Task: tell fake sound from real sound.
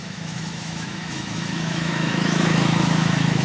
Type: fake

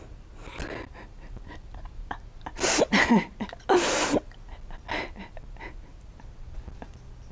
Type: real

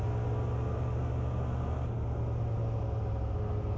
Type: real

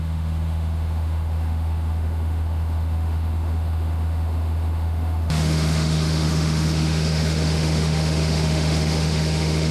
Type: fake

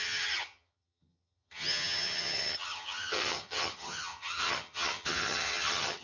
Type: fake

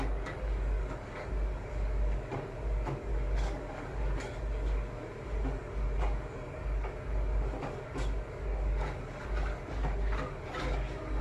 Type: fake